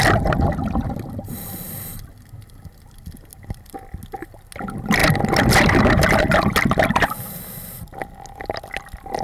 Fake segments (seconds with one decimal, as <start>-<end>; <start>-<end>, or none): none